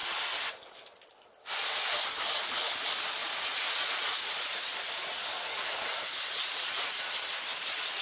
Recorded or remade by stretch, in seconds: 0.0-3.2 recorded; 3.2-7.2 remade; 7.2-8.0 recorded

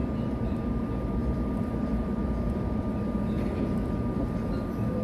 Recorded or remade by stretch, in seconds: 0.0-0.6 remade; 0.6-1.2 recorded; 1.2-4.2 remade; 4.2-5.0 recorded

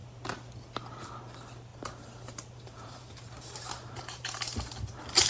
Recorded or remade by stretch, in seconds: 0.0-1.7 recorded; 1.7-4.7 remade; 4.7-5.3 recorded

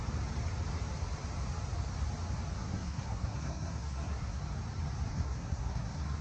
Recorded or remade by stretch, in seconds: 0.0-2.6 recorded; 2.6-4.4 remade; 4.4-5.1 recorded; 5.1-6.2 remade

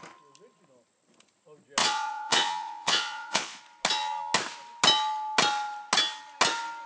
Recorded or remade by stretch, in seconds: 0.0-1.8 recorded; 1.8-3.6 remade; 3.6-6.9 recorded